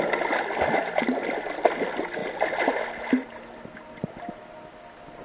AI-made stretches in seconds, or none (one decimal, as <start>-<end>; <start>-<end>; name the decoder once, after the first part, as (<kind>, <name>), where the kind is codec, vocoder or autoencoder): none